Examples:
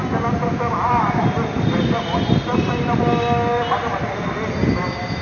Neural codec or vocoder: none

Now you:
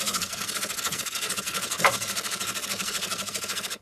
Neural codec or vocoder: codec, SNAC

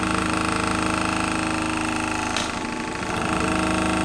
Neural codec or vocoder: none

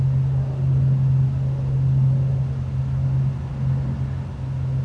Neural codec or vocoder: none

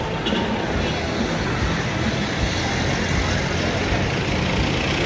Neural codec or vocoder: none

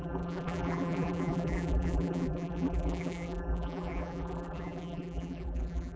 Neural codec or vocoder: vocoder, BigVGAN v2